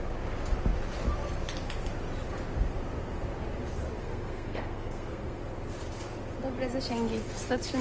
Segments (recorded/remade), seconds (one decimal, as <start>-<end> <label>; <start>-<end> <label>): 0.0-4.0 recorded; 4.0-5.4 remade; 5.4-7.8 recorded